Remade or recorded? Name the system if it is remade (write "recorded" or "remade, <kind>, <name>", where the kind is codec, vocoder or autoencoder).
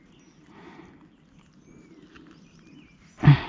recorded